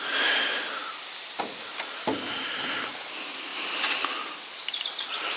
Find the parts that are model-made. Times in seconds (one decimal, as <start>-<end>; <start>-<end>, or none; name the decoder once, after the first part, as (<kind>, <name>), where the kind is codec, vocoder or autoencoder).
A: none